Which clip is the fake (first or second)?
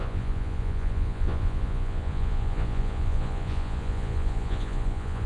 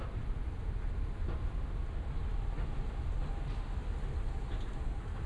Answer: first